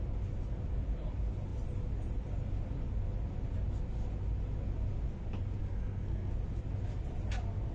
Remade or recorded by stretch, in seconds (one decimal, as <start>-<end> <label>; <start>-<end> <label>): 0.0-5.6 recorded; 5.6-6.3 remade; 6.3-7.7 recorded